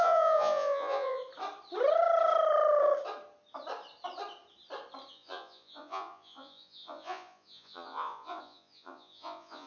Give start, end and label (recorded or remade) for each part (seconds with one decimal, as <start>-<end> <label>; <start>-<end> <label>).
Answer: 0.0-1.2 remade; 1.2-5.1 recorded; 5.1-9.7 remade